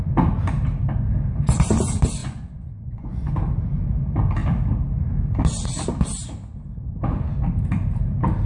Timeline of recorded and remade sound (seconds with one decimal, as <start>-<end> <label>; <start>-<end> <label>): 0.0-2.2 recorded; 2.2-3.3 remade; 3.3-8.5 recorded